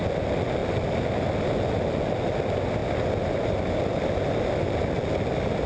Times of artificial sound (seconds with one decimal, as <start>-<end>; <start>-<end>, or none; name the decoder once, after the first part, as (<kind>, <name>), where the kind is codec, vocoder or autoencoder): none